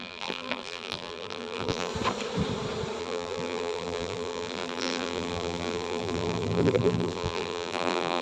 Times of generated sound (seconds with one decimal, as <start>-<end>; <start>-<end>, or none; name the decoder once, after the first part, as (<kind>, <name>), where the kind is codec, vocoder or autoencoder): 0.0-1.9 (vocoder, BigVGAN v2); 3.0-8.2